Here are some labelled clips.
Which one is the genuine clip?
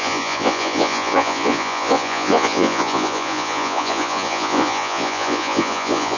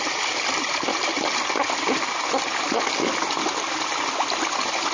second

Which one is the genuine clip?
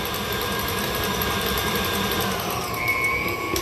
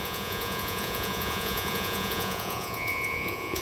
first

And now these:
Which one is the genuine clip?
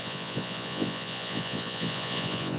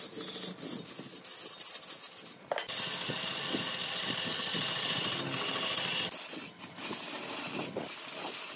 second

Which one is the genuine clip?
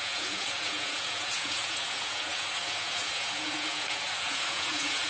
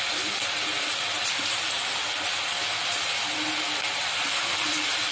second